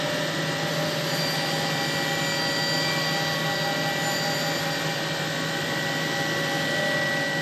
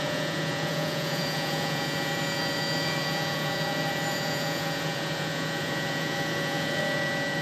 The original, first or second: first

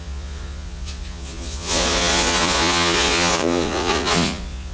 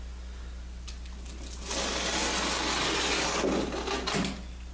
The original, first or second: second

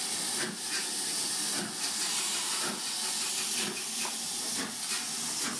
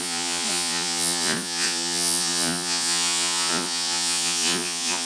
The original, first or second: first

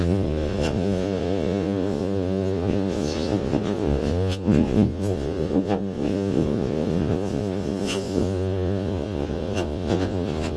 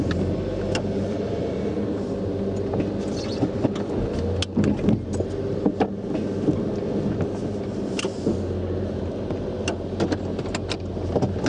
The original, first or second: second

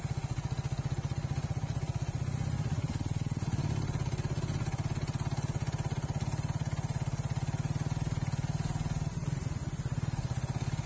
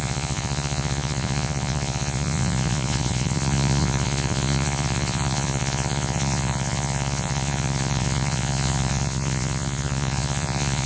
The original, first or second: first